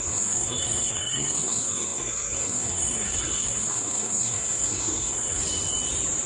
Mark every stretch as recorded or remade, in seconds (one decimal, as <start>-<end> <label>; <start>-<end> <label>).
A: 0.0-5.4 remade; 5.4-6.3 recorded